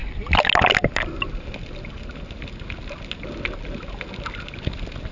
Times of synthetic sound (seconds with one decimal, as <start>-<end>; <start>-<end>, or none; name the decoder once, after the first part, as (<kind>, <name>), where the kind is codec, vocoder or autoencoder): none